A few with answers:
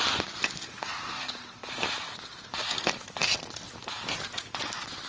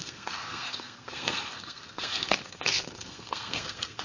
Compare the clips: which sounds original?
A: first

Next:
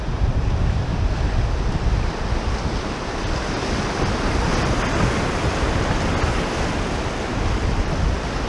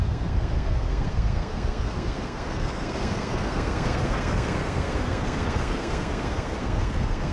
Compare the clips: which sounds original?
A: first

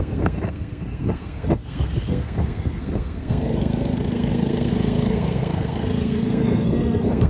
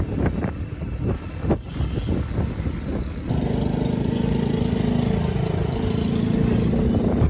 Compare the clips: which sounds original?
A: second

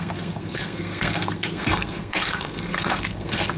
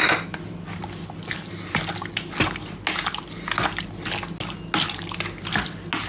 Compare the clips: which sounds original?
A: second